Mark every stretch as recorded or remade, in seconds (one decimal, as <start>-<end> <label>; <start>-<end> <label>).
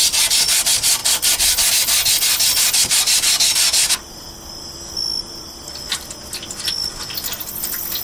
0.0-8.0 recorded